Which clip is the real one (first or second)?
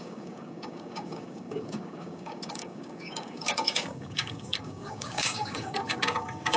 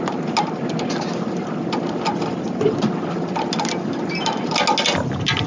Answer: second